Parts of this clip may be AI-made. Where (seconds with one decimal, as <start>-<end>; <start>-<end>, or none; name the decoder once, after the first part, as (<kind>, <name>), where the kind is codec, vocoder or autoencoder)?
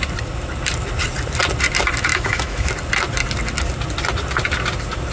2.1-2.7 (autoencoder, DAC-VAE)